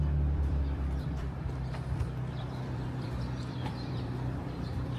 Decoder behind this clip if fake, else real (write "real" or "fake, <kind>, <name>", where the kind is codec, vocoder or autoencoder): fake, vocoder, BigVGAN v2